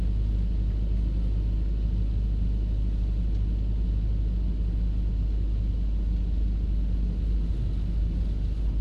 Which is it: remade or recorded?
recorded